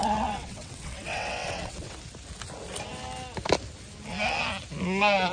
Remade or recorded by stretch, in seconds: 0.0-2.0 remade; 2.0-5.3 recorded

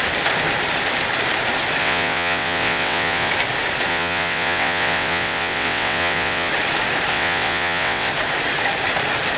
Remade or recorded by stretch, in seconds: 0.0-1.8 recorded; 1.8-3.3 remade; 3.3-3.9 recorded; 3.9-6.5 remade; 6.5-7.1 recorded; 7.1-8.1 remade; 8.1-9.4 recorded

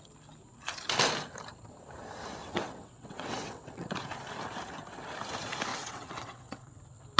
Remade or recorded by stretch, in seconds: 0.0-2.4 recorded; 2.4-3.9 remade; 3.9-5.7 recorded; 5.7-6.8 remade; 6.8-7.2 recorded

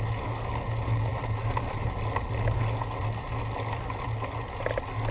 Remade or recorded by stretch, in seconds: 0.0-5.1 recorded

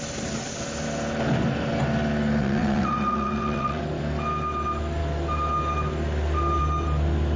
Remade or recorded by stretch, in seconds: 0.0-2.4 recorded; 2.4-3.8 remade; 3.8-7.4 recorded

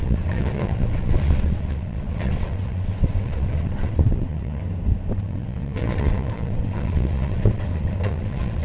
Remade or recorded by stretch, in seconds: 0.0-4.6 remade; 4.6-5.2 recorded; 5.2-8.6 remade